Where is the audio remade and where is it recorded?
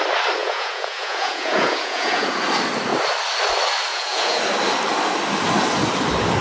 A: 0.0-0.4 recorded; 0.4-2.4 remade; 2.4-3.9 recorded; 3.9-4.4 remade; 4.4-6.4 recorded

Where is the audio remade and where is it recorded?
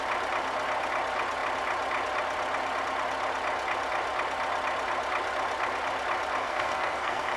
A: 0.0-6.4 recorded; 6.4-7.4 remade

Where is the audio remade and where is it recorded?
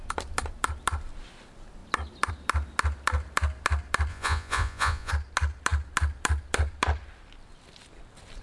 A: 0.0-4.1 recorded; 4.1-5.1 remade; 5.1-8.4 recorded